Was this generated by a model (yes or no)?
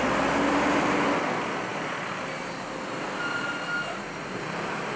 no